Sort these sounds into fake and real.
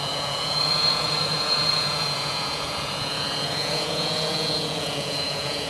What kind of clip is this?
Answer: fake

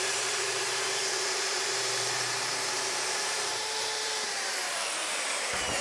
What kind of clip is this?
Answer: fake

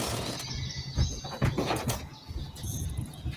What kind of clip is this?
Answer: fake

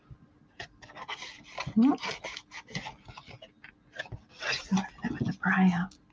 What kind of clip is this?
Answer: real